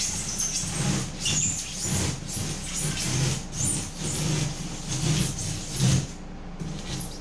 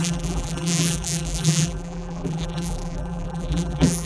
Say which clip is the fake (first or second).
second